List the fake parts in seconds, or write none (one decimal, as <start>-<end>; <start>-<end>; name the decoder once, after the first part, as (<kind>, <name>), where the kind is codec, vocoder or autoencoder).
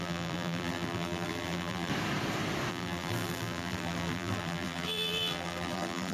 0.0-1.9 (vocoder, BigVGAN v2); 2.7-6.1